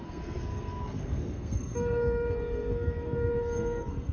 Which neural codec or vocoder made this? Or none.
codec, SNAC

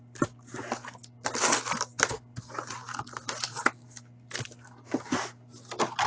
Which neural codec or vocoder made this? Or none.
none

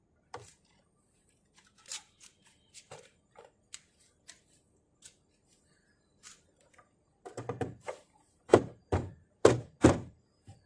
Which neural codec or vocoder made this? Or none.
vocoder, BigVGAN v2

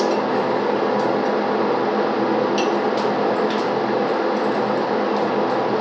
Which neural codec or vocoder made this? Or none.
none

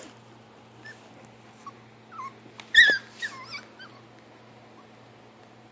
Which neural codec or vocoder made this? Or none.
none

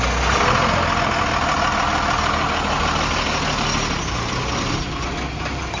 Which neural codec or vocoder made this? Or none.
none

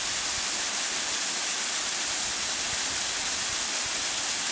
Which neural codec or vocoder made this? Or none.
none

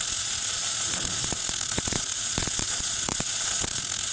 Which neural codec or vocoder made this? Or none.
vocoder, Vocos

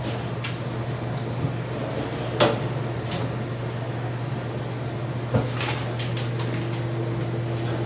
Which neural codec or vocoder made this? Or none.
none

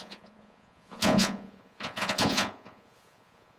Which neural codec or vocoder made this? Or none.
vocoder, Vocos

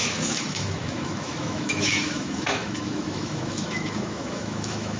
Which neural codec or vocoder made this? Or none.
autoencoder, DAC-VAE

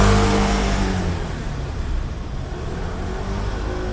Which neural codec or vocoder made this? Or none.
none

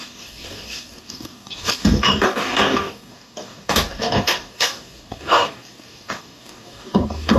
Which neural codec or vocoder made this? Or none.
codec, DAC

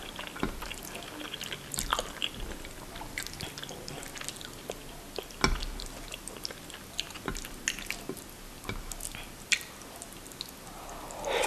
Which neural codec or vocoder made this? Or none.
none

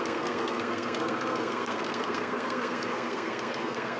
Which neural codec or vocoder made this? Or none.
codec, SNAC